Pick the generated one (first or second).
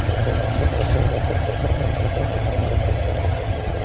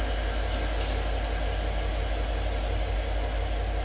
first